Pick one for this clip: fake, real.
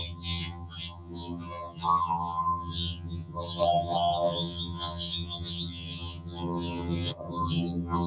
fake